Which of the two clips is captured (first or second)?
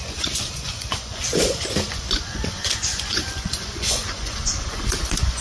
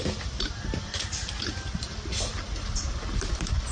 second